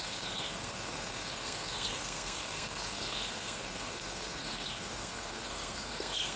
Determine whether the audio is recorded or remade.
remade